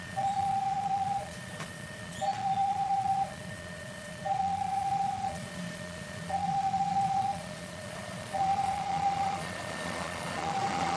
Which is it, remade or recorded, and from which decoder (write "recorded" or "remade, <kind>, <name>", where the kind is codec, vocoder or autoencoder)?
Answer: remade, vocoder, Vocos